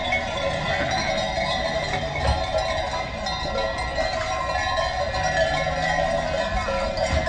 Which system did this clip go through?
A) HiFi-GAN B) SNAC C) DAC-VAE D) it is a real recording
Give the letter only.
D